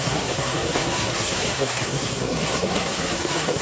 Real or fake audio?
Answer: fake